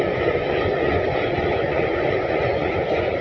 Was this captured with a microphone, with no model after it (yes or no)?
no